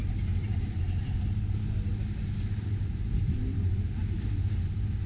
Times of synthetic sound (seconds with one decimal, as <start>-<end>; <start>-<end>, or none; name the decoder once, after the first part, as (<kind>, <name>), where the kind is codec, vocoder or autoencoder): none